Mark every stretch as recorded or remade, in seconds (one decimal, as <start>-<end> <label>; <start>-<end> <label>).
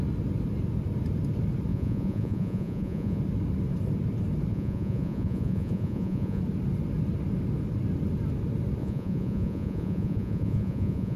0.0-1.7 recorded; 1.7-3.2 remade; 3.2-4.5 recorded; 4.5-6.4 remade; 6.4-8.8 recorded; 8.8-11.2 remade